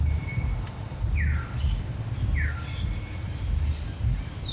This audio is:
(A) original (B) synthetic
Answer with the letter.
A